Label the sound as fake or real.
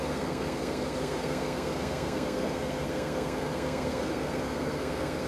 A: fake